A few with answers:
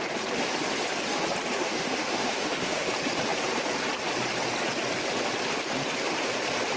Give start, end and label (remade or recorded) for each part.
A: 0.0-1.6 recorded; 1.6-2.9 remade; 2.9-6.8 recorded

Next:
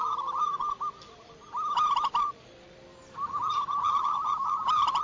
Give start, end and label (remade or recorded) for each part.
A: 0.0-0.5 recorded; 0.5-3.5 remade; 3.5-5.0 recorded

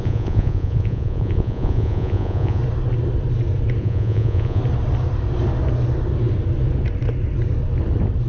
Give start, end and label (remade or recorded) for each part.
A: 0.0-2.6 remade; 2.6-3.8 recorded; 3.8-4.6 remade; 4.6-8.3 recorded

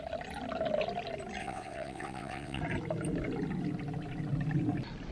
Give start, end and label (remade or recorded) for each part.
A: 0.0-1.4 recorded; 1.4-2.6 remade; 2.6-5.1 recorded

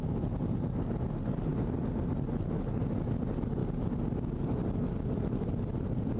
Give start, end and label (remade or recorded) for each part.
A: 0.0-6.2 recorded

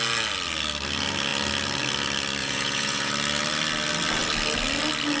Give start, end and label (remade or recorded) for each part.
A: 0.0-2.4 recorded; 2.4-3.1 remade; 3.1-5.2 recorded

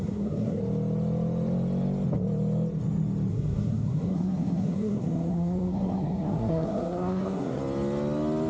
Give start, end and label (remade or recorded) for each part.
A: 0.0-0.6 remade; 0.6-3.3 recorded; 3.3-7.6 remade; 7.6-8.5 recorded

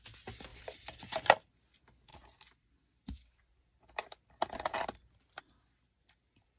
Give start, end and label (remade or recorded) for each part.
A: 0.0-6.6 recorded